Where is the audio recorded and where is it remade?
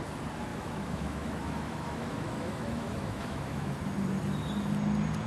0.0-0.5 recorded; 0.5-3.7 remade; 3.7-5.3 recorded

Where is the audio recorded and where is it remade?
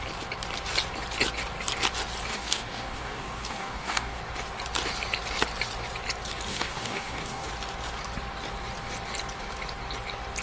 0.0-2.3 recorded; 2.3-4.2 remade; 4.2-6.5 recorded; 6.5-7.5 remade; 7.5-10.4 recorded